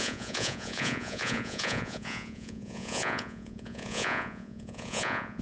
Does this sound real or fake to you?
fake